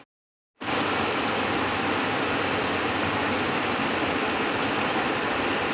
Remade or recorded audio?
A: recorded